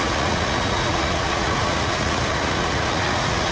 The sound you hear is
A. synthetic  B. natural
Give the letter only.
A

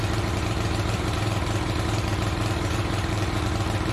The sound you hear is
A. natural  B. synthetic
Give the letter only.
B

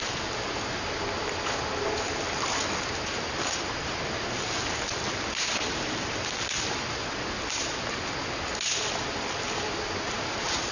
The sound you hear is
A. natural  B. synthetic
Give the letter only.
A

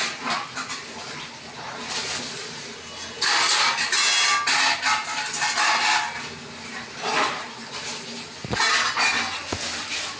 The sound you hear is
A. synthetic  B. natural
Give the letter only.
B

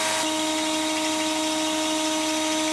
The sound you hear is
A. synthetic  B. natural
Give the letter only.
B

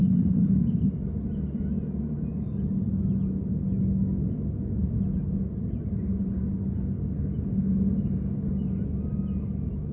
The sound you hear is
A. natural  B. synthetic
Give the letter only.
A